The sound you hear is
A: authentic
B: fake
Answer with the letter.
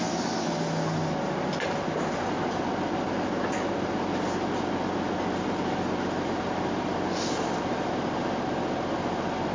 A